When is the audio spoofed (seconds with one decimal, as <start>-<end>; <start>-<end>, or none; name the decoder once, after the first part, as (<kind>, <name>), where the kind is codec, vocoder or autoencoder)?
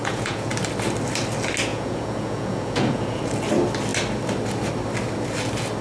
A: 0.0-0.5 (vocoder, Vocos); 1.7-3.2